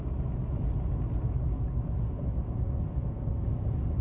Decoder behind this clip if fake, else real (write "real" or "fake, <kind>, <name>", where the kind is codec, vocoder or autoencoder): real